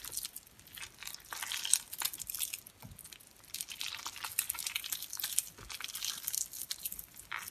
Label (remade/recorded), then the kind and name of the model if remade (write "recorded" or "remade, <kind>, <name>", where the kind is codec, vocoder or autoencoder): recorded